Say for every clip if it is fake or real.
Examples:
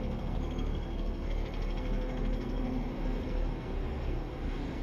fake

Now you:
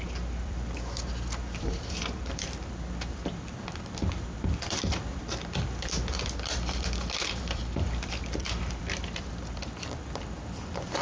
fake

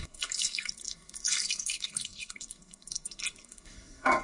fake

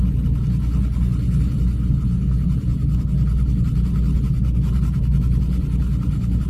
real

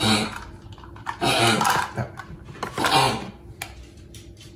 real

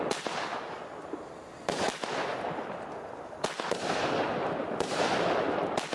real